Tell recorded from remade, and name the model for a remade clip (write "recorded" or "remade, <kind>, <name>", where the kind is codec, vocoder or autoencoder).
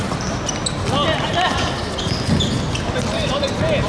recorded